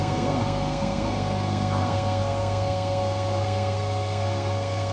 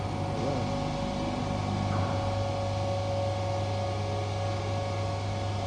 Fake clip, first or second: first